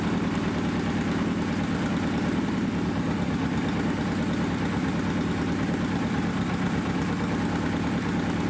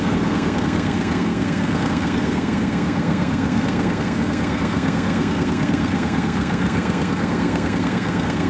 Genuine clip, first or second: first